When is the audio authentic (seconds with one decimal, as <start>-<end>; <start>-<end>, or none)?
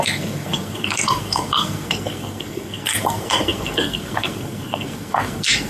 none